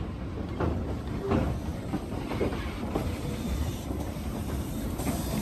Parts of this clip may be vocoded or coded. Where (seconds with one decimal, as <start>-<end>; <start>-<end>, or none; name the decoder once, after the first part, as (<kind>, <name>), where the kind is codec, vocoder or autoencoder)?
1.7-4.0 (vocoder, BigVGAN v2)